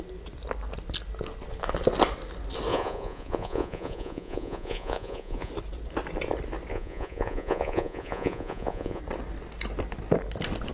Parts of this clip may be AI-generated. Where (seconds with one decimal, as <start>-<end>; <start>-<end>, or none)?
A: 2.7-5.5; 6.7-9.0